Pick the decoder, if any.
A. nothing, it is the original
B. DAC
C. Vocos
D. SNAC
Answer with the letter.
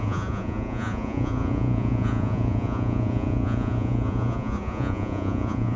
C